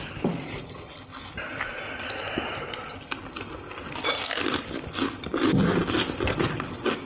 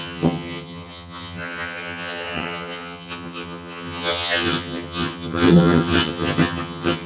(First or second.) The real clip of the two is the first